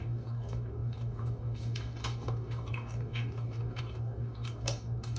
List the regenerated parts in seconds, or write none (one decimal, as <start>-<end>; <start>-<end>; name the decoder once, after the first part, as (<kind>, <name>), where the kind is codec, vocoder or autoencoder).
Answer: 0.0-5.2 (codec, DAC)